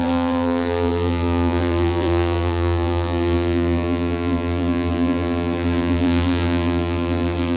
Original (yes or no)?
no